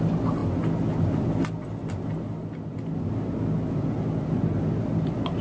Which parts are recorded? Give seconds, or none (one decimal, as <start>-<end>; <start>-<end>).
0.0-5.4